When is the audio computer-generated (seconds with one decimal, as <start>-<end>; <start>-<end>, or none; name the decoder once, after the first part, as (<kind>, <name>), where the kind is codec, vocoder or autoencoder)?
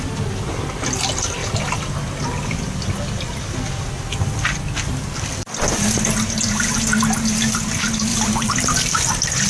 8.1-9.1 (vocoder, BigVGAN v2)